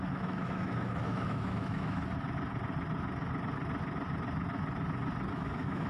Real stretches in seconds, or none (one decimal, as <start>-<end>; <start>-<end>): 2.0-5.3